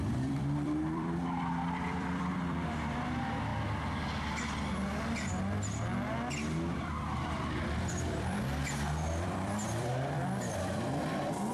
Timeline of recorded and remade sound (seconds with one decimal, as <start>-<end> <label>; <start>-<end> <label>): 0.0-3.5 remade; 3.5-6.8 recorded; 6.8-11.5 remade